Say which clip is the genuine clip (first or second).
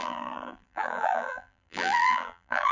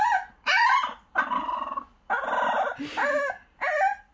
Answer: second